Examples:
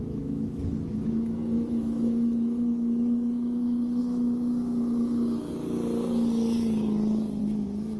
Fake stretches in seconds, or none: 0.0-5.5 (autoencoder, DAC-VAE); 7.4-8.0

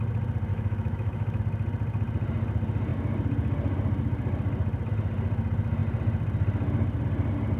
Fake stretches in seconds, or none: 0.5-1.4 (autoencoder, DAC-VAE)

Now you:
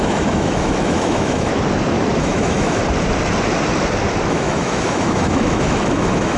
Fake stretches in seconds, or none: 0.0-1.5 (autoencoder, DAC-VAE); 2.2-2.8; 4.3-6.4